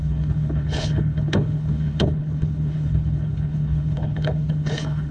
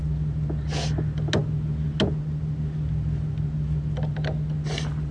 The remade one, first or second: first